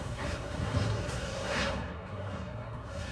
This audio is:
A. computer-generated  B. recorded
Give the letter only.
A